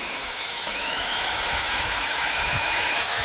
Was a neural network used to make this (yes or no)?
yes